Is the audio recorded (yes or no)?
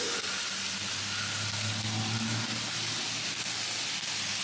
yes